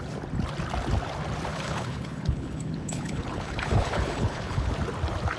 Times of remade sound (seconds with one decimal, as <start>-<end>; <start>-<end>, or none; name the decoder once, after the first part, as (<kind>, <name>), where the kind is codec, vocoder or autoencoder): 1.5-4.7 (codec, HILCodec)